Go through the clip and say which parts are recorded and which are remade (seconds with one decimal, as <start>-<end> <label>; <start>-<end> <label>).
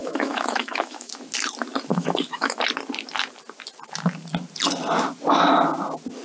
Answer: 0.0-1.1 remade; 1.1-1.9 recorded; 1.9-2.6 remade; 2.6-6.2 recorded